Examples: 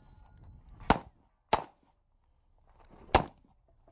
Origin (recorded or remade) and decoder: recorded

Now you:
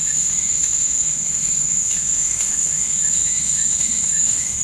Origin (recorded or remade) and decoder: remade, autoencoder, DAC-VAE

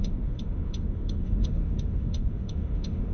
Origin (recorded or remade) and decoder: remade, autoencoder, DAC-VAE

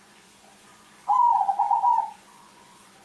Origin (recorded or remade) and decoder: remade, vocoder, Vocos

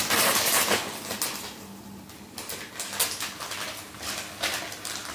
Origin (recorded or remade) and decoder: recorded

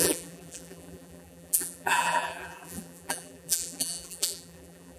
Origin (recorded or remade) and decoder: remade, vocoder, BigVGAN v2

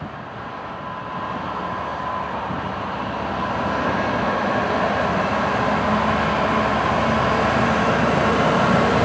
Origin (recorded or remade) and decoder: recorded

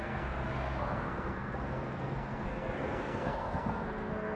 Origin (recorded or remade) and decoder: remade, codec, SNAC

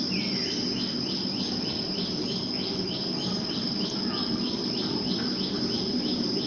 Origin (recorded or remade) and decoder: recorded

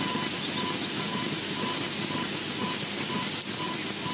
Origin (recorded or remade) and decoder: recorded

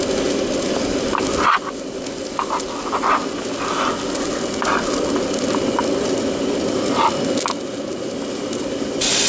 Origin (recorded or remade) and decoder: recorded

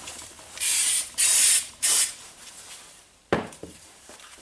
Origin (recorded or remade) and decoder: remade, vocoder, BigVGAN v2